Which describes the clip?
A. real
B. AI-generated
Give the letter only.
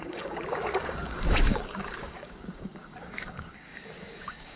B